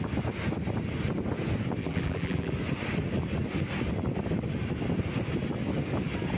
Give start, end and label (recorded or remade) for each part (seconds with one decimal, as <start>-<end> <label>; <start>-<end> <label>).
0.0-1.8 recorded; 1.8-2.5 remade; 2.5-6.4 recorded